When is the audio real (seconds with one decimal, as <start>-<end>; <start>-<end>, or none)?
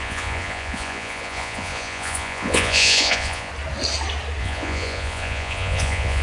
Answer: 3.5-4.4